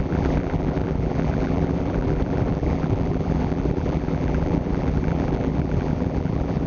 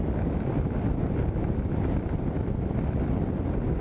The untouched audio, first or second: second